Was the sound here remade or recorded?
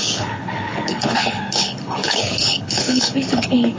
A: remade